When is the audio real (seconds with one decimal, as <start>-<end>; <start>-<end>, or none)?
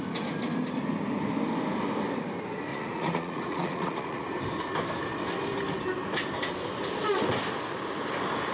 0.0-2.7; 4.3-8.5